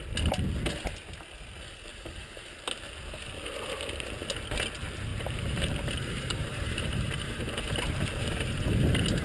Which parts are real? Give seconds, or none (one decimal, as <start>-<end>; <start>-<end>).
0.0-1.9; 2.5-5.1; 7.9-9.2